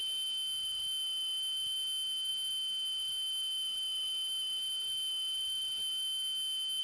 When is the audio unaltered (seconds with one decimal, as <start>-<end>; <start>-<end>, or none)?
0.0-6.8